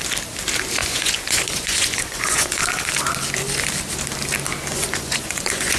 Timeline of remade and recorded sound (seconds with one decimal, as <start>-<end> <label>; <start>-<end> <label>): 0.0-0.8 recorded; 0.8-2.9 remade; 2.9-4.7 recorded; 4.7-5.8 remade